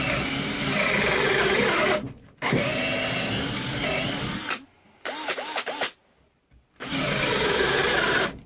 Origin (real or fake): real